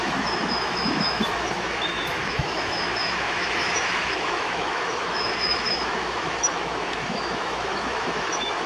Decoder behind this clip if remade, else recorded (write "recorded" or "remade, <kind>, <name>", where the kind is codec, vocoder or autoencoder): remade, autoencoder, DAC-VAE